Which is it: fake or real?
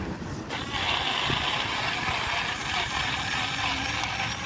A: real